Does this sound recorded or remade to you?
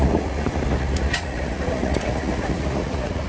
remade